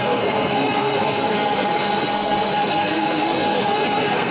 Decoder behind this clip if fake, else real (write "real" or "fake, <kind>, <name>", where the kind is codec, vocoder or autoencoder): fake, codec, SNAC